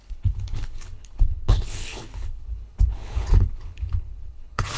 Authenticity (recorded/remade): remade